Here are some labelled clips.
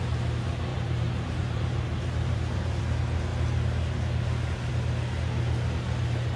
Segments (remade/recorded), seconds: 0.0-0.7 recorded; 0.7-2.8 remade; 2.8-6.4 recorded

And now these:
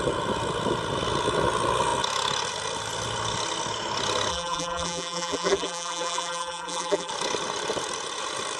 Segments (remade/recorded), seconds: 0.0-4.3 recorded; 4.3-7.1 remade; 7.1-8.6 recorded

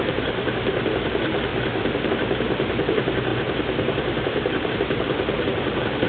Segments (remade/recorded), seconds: 0.0-1.5 remade; 1.5-2.1 recorded; 2.1-6.1 remade